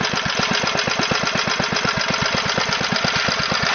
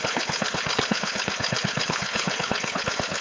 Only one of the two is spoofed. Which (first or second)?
second